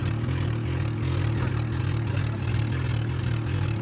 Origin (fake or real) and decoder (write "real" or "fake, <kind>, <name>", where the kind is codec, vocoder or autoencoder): real